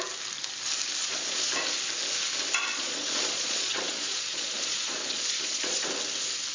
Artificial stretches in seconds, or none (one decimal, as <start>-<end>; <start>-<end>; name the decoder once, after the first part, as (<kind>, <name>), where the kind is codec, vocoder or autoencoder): 1.0-1.5 (vocoder, Vocos); 2.7-5.9